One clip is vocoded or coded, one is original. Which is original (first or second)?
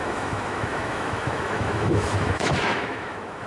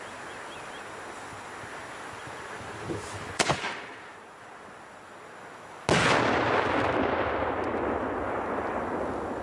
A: second